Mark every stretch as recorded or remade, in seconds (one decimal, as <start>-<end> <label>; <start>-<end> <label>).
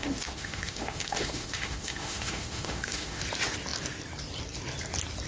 0.0-3.2 remade; 3.2-5.3 recorded